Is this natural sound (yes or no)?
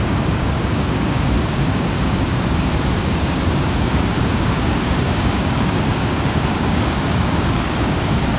no